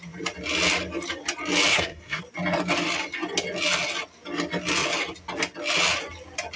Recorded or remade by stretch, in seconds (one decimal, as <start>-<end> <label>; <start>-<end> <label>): 0.0-1.7 recorded; 1.7-2.2 remade; 2.2-6.6 recorded